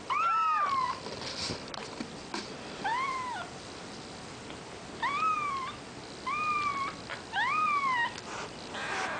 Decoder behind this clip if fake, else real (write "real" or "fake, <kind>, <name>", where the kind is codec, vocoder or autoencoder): real